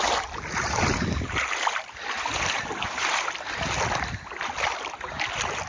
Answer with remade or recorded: recorded